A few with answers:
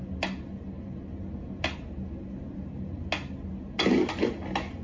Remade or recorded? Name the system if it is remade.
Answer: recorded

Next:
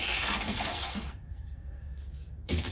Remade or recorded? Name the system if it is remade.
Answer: remade, codec, SNAC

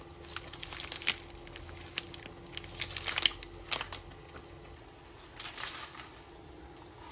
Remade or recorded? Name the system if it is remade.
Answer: recorded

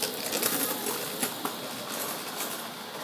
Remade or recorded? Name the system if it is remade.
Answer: recorded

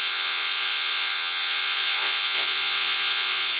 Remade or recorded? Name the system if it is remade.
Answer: remade, vocoder, Vocos